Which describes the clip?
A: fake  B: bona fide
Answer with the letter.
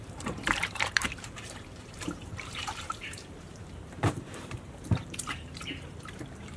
A